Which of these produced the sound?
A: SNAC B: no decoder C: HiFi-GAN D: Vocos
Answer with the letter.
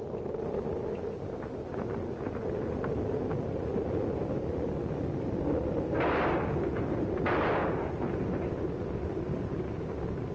B